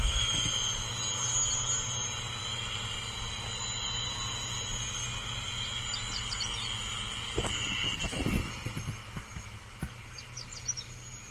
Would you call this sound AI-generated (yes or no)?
no